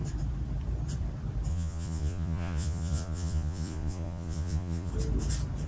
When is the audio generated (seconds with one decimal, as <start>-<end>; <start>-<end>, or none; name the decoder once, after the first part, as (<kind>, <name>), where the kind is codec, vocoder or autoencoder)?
1.5-4.9 (vocoder, Vocos)